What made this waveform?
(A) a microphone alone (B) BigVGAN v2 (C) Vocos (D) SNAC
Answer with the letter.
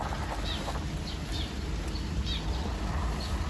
A